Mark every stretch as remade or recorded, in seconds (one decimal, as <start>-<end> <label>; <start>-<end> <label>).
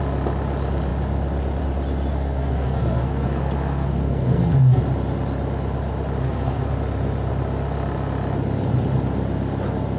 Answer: 0.0-2.1 recorded; 2.1-4.8 remade; 4.8-6.2 recorded; 6.2-6.7 remade; 6.7-10.0 recorded